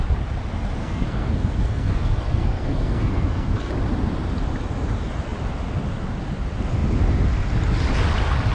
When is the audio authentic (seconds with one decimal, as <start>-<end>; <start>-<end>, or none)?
0.0-0.8; 3.7-8.5